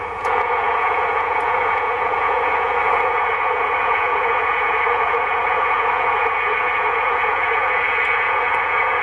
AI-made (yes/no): yes